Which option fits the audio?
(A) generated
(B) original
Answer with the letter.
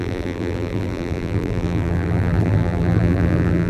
A